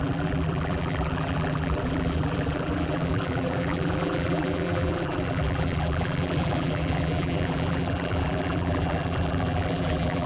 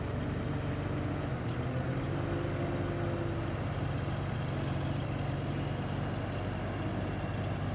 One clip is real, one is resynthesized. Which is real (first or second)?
second